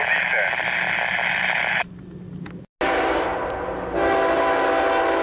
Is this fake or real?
real